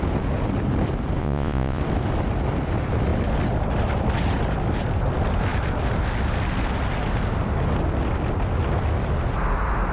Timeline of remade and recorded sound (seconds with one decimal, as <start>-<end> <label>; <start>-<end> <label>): 0.0-1.2 recorded; 1.2-1.8 remade; 1.8-9.9 recorded